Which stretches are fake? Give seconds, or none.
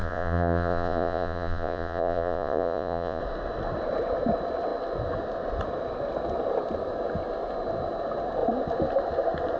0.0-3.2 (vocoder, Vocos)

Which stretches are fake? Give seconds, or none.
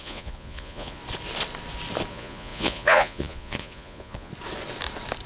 0.0-1.0 (vocoder, Vocos); 2.1-4.3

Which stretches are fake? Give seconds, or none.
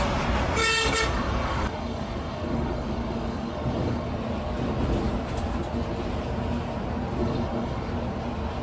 0.6-4.1 (codec, DAC); 7.2-7.9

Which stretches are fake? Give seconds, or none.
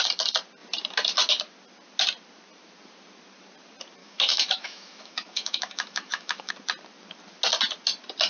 4.0-6.5 (autoencoder, DAC-VAE)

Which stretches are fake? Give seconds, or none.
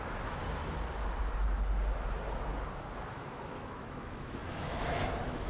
0.0-0.4 (autoencoder, DAC-VAE); 3.1-5.5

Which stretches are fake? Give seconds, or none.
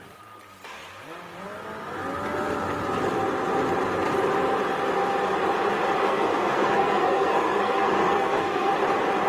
6.0-8.7 (codec, SNAC)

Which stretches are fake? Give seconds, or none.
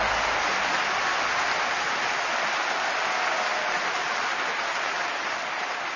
none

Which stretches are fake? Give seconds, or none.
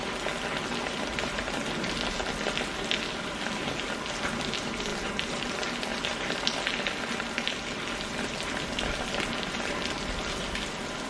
none